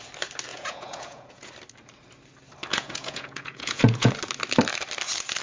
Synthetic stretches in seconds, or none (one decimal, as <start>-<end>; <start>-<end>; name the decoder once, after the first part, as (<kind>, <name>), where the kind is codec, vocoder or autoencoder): 0.5-1.5 (vocoder, Vocos); 2.7-4.1